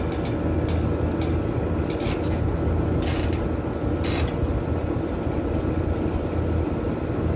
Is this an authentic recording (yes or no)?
yes